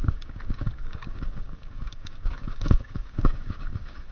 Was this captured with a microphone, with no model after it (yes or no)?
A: no